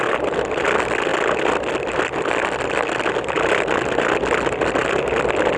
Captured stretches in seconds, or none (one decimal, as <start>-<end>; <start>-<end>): 0.0-5.6